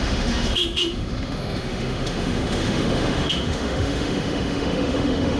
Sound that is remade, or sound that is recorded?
remade